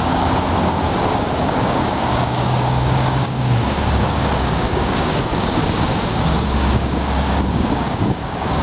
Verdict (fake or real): fake